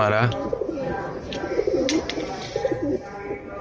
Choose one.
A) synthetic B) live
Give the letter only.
B